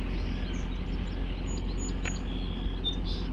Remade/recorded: recorded